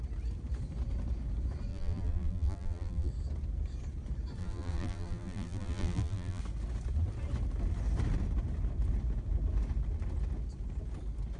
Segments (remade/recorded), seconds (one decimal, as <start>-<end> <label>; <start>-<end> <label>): 0.0-1.7 recorded; 1.7-3.1 remade; 3.1-4.4 recorded; 4.4-6.4 remade; 6.4-11.4 recorded